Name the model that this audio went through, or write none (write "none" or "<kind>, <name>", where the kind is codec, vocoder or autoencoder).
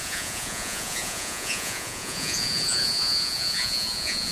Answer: vocoder, Vocos